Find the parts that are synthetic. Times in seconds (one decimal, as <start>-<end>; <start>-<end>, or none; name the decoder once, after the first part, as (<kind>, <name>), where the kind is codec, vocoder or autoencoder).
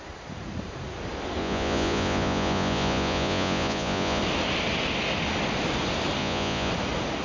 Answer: 1.4-4.2 (vocoder, Vocos); 6.2-6.7